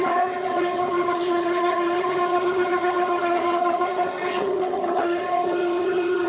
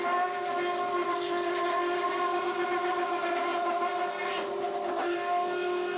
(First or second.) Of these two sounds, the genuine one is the second